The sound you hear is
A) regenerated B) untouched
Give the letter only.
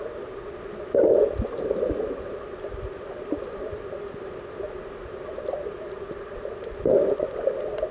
B